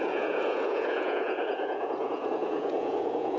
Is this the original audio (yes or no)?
no